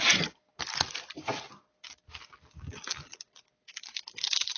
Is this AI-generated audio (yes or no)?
no